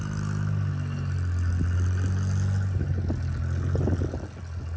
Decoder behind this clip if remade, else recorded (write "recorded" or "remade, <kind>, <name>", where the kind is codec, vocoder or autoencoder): recorded